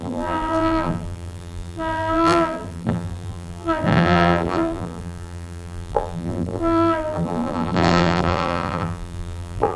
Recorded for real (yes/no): no